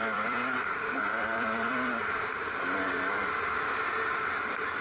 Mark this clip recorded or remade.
remade